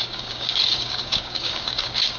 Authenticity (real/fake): fake